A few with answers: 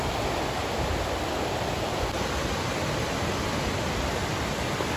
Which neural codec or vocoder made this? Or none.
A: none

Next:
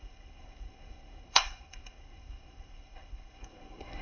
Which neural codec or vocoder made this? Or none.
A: codec, SNAC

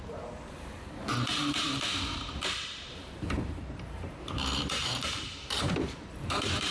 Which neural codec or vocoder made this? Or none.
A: vocoder, BigVGAN v2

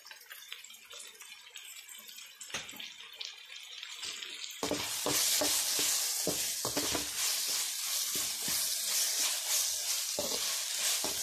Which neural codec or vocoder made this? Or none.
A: none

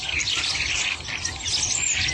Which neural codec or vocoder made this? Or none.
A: none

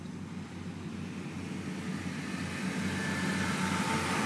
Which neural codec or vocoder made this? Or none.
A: none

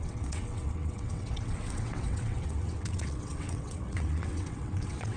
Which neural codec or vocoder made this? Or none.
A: vocoder, WaveNeXt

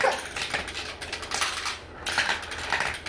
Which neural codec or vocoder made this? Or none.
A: none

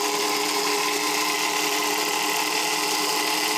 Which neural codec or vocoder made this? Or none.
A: none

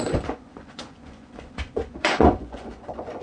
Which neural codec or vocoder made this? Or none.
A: vocoder, Vocos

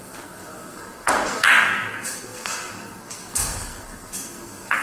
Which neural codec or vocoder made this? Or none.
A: codec, SNAC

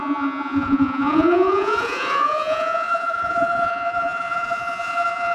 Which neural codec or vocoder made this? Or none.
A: vocoder, Vocos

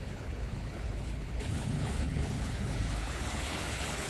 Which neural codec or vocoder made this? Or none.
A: codec, HILCodec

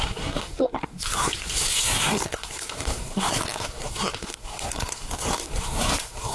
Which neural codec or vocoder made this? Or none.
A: codec, SNAC